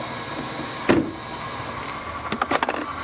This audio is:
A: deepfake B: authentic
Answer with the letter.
B